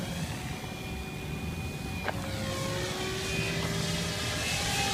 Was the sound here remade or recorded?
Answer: recorded